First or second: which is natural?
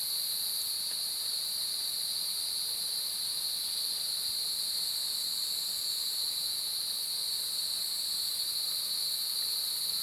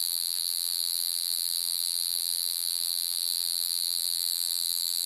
first